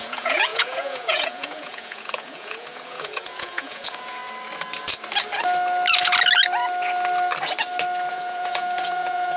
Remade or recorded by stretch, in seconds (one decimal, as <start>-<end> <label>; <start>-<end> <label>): 0.0-4.2 remade; 4.2-8.1 recorded; 8.1-9.4 remade